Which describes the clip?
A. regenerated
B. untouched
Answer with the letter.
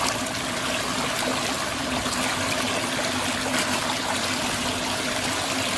B